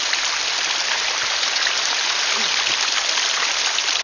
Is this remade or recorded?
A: recorded